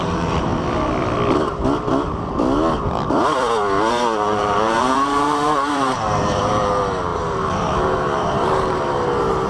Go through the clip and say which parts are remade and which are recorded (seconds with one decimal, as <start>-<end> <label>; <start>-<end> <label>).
0.0-0.5 remade; 0.5-3.9 recorded; 3.9-9.5 remade